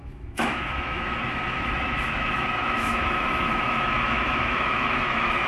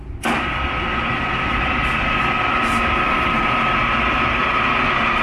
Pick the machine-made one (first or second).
first